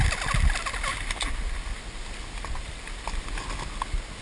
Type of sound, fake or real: real